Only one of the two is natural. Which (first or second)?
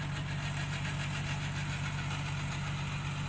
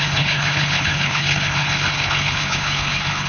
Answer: first